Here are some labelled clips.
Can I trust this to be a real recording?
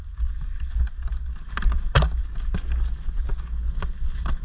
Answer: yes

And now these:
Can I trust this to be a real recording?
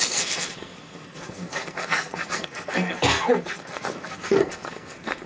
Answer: no